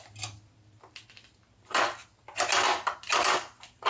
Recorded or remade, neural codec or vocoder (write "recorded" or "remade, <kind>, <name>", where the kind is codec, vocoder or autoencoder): recorded